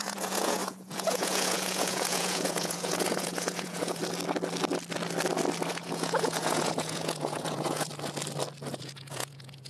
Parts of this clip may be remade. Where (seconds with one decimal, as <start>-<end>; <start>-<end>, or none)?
0.0-4.0; 5.7-7.9; 8.7-9.7